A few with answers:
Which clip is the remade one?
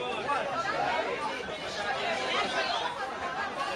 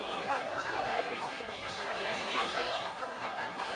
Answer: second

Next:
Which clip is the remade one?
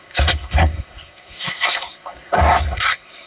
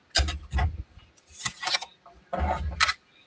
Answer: first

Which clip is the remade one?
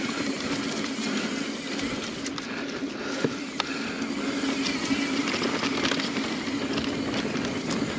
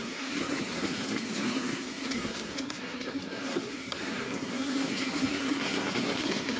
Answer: second